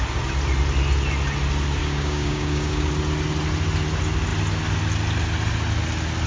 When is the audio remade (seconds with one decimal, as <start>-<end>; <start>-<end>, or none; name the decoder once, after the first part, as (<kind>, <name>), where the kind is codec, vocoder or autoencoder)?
1.8-2.9 (codec, DAC)